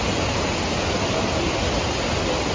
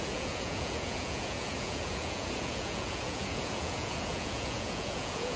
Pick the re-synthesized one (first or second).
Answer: second